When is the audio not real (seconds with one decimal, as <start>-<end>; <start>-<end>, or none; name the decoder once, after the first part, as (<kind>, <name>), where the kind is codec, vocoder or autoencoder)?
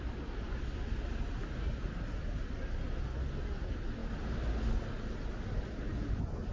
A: none